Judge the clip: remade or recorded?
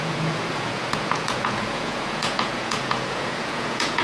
remade